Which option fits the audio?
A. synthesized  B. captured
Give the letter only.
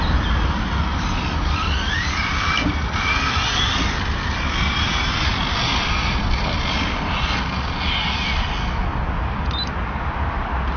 B